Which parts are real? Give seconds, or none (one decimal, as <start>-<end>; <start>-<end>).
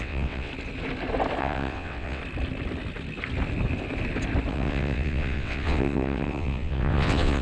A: 0.5-1.4; 2.2-4.5